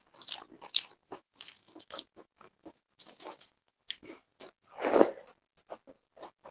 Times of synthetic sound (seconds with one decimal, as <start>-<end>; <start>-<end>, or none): 1.0-4.4